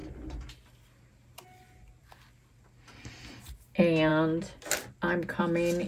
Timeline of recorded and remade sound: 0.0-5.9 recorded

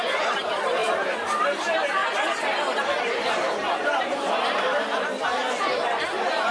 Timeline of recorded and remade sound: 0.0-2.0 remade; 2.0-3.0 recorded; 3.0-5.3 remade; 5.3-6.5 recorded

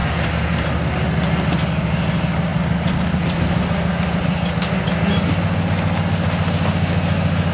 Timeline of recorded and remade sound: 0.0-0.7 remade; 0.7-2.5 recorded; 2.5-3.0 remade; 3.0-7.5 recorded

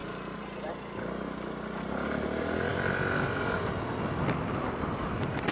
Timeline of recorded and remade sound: 0.0-0.7 remade; 0.7-5.5 recorded

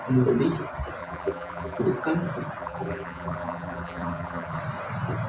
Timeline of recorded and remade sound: 0.0-1.0 recorded; 1.0-1.8 remade; 1.8-2.6 recorded; 2.6-4.6 remade; 4.6-5.3 recorded